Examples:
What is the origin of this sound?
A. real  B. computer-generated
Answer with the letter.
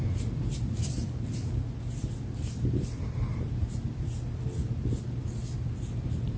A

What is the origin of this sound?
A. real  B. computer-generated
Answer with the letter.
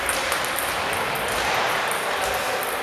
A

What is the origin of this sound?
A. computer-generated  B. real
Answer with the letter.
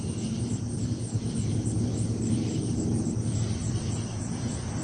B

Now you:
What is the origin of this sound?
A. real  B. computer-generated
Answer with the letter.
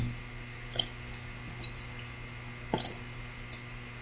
A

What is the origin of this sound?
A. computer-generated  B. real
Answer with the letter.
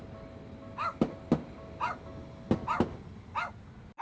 B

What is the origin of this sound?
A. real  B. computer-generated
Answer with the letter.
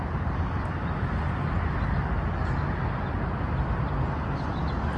A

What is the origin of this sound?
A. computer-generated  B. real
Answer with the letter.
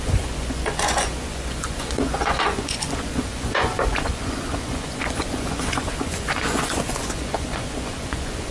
A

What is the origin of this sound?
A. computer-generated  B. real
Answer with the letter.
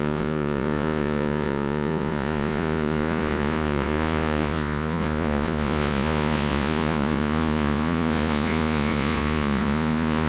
A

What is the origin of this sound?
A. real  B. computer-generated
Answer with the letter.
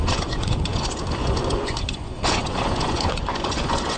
B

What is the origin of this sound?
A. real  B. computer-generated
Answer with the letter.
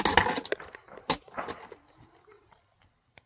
A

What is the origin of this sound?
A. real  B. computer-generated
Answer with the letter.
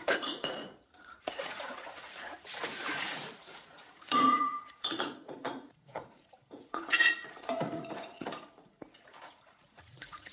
B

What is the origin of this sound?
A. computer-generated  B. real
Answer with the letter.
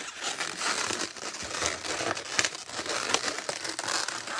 B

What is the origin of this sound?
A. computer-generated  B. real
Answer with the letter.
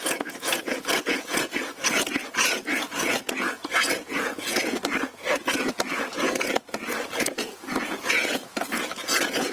A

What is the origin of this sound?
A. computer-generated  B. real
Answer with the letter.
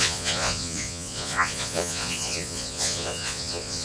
A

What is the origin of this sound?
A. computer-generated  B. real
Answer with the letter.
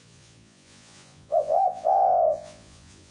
A